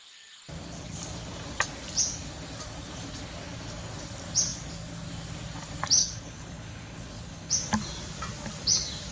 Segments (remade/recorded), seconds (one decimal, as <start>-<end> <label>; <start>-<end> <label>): 0.0-6.0 recorded; 6.0-7.5 remade; 7.5-9.1 recorded